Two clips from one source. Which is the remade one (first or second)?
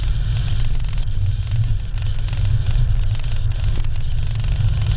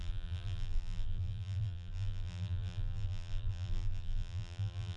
second